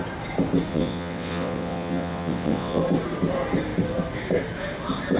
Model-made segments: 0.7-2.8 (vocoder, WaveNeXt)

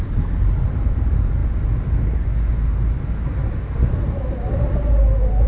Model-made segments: none

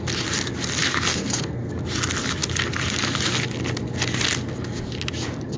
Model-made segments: 1.1-1.7 (codec, SNAC)

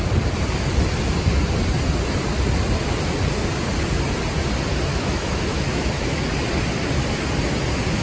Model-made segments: 4.9-6.2 (autoencoder, DAC-VAE)

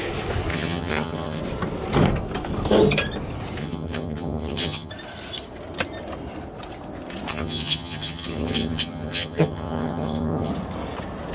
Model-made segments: 0.5-1.4 (vocoder, HiFi-GAN); 3.6-4.9; 7.3-10.5

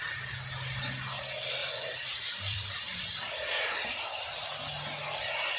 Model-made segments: 1.6-3.0 (vocoder, BigVGAN v2)